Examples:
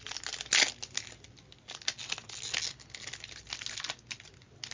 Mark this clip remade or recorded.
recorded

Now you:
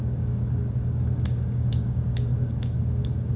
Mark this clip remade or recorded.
remade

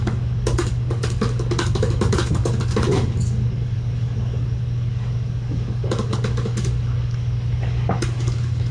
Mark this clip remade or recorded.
remade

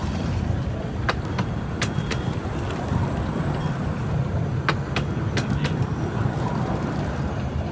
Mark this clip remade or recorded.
recorded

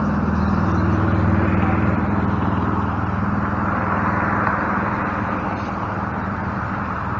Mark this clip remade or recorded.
recorded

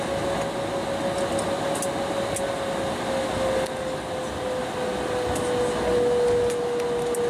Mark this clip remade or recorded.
recorded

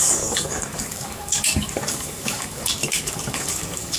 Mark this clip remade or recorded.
remade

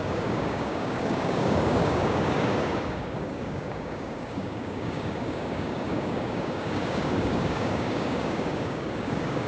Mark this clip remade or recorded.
remade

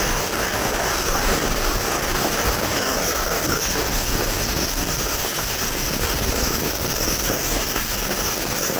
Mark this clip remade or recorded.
remade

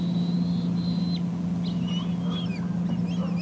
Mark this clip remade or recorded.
recorded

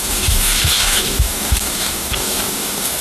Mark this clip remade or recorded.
remade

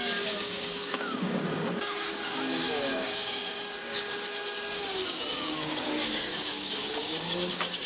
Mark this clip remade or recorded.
remade